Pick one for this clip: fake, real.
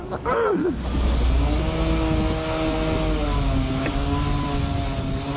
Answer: real